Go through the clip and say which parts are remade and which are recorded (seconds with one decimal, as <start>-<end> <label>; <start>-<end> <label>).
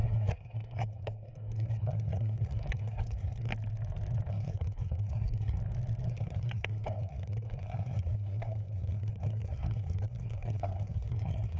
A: 0.0-3.5 remade; 3.5-4.3 recorded; 4.3-5.6 remade; 5.6-6.1 recorded; 6.1-11.6 remade